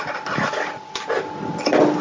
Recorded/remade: recorded